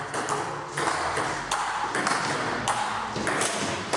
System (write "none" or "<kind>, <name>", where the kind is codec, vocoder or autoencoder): none